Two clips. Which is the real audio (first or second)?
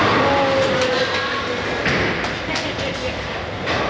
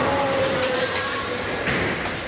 first